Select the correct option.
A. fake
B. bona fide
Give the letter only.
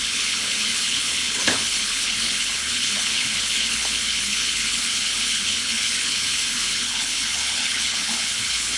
A